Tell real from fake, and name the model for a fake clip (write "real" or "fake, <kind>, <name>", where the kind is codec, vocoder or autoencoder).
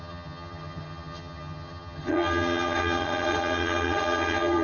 fake, vocoder, HiFi-GAN